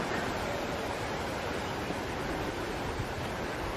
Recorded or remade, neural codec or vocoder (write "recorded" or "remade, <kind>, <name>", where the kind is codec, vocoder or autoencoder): remade, vocoder, BigVGAN v2